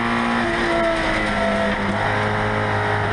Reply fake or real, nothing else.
real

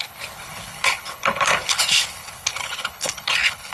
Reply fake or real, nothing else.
fake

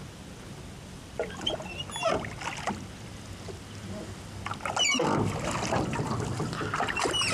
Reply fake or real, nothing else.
real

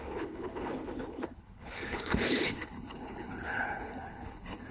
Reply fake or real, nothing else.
fake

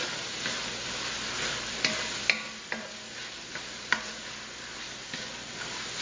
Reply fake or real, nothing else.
real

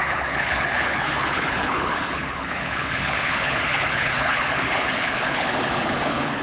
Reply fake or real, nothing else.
fake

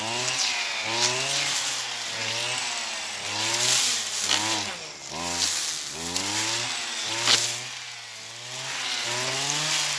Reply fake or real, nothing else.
real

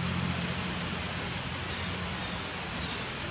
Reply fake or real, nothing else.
real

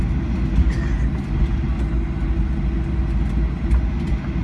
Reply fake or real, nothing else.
real